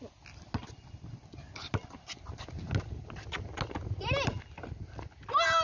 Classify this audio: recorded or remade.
recorded